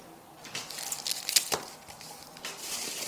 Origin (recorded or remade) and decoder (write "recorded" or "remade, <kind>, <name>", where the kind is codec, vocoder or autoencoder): recorded